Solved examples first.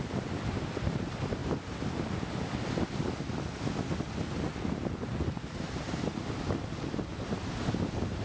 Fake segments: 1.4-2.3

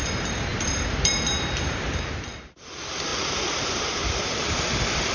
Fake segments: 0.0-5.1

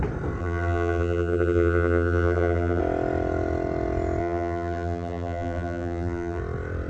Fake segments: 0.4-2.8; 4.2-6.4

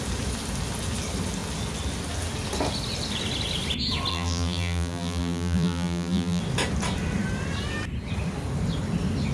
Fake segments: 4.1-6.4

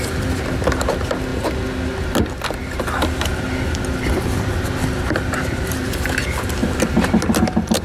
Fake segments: 6.6-7.3

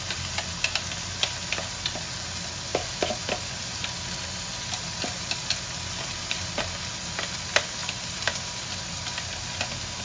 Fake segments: 7.8-8.8

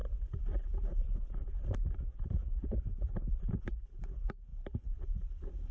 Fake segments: 0.0-1.5; 2.1-3.9

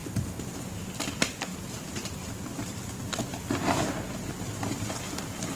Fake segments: 0.0-0.8; 1.5-4.9